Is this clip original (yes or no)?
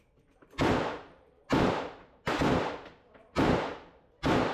no